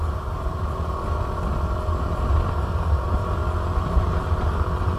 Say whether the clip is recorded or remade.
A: recorded